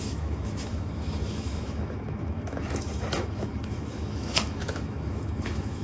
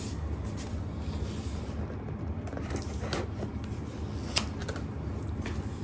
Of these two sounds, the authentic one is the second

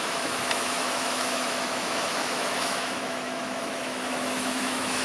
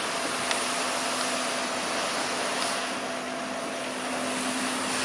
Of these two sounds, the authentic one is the second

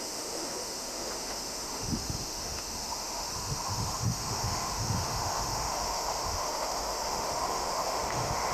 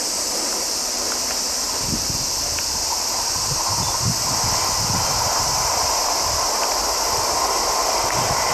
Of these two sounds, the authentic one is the second